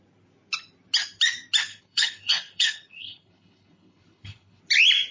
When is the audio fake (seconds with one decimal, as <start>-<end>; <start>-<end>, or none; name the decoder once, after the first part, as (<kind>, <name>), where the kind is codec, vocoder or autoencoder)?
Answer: 1.7-4.6 (codec, HILCodec)